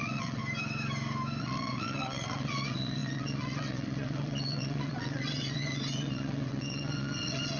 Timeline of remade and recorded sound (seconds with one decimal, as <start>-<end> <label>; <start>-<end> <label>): 0.0-0.4 remade; 0.4-1.4 recorded; 1.4-7.6 remade